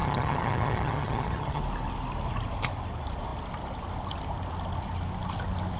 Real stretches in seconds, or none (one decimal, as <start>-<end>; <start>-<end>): 1.6-5.8